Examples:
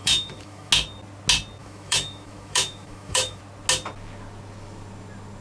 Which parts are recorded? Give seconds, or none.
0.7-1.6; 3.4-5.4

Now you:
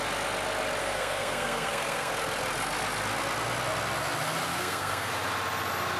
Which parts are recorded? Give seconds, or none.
0.0-0.8; 2.1-4.5; 5.1-6.0

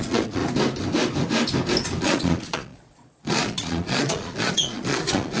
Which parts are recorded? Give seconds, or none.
0.4-2.0

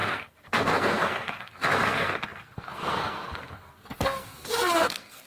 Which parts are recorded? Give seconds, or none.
none

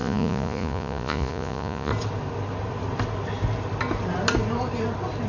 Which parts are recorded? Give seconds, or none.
1.9-5.3

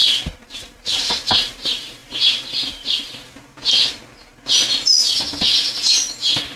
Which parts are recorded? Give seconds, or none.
0.0-6.6

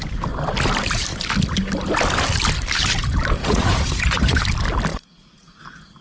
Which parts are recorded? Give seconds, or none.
0.0-3.4; 4.4-4.9; 5.6-6.0

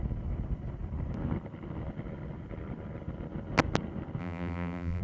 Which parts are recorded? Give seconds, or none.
0.0-4.2